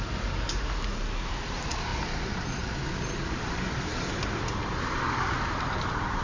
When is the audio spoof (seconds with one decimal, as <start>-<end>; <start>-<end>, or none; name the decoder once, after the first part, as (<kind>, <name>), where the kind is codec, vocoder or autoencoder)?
0.0-1.9 (vocoder, BigVGAN v2); 3.2-6.2